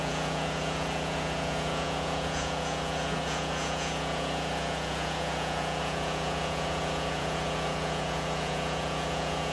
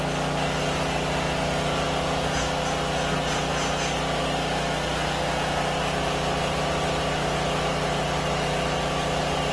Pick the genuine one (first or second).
second